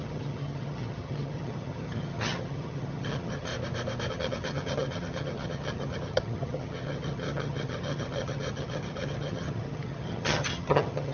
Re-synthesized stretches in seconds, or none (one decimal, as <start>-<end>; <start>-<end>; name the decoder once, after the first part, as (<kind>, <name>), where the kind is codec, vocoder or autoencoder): 0.0-3.5 (vocoder, HiFi-GAN); 4.1-11.1

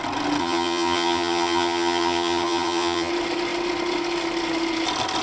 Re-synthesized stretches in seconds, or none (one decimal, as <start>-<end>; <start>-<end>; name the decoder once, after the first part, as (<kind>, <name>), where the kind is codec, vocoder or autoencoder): 0.4-3.1 (vocoder, HiFi-GAN)